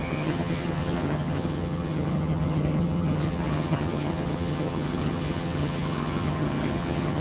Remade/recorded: remade